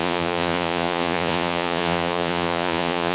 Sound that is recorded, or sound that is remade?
remade